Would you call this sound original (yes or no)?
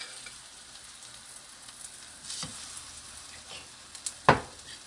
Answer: yes